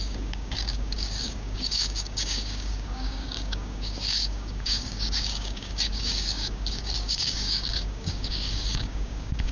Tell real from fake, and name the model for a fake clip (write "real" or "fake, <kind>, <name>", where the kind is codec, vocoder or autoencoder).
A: fake, codec, DAC